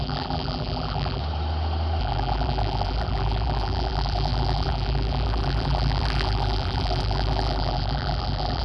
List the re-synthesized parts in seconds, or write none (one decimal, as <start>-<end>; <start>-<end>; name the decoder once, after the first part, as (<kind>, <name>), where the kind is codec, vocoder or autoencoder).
0.0-1.2 (vocoder, BigVGAN v2); 2.0-8.6